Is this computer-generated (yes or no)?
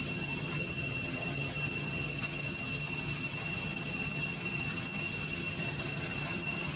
yes